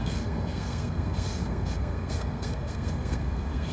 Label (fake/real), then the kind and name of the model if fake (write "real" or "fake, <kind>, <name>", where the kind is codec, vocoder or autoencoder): fake, codec, SNAC